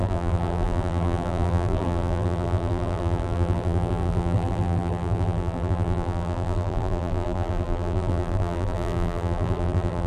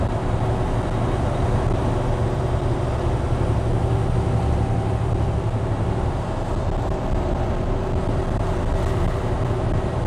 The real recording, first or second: second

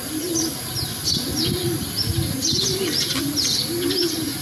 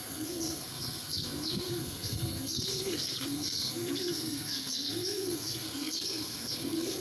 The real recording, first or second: first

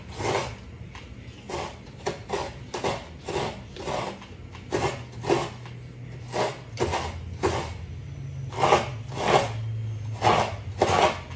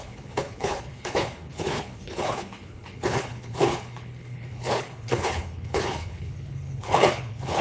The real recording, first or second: first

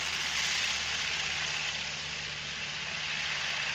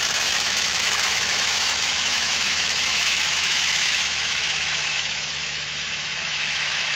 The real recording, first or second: first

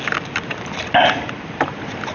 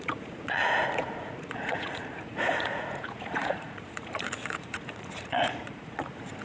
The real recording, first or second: first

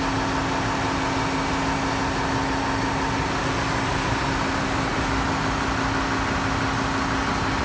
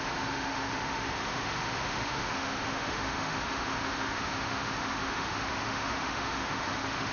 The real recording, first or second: first